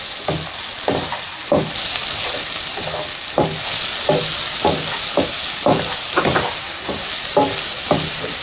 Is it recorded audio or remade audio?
recorded